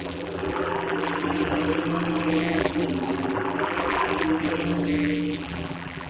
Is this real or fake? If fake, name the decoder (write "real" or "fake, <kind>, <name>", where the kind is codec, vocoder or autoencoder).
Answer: fake, vocoder, BigVGAN v2